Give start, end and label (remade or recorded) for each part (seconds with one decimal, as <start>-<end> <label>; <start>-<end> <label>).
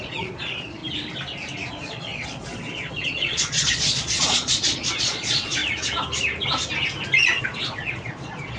0.0-0.8 remade; 0.8-1.7 recorded; 1.7-5.6 remade; 5.6-7.4 recorded; 7.4-8.6 remade